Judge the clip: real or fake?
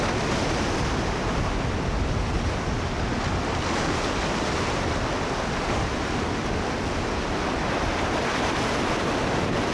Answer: real